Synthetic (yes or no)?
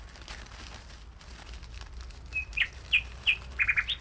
no